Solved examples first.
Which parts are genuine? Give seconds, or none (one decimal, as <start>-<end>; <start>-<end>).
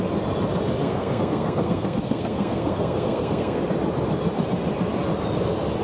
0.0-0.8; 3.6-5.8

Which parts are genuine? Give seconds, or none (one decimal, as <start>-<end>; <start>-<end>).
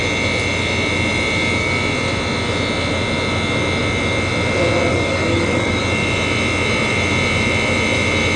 0.0-4.9; 5.8-8.4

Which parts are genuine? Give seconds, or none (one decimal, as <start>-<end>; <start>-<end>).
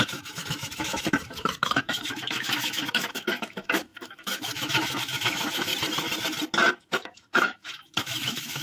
5.7-6.8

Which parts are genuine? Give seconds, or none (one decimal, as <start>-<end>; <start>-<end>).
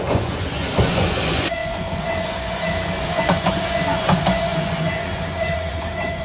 none